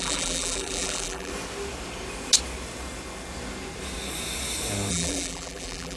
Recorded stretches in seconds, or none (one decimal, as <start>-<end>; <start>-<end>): 1.3-4.9